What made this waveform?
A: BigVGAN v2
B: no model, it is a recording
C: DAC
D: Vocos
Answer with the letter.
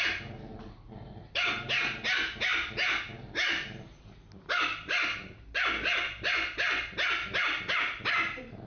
B